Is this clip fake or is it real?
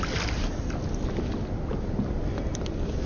real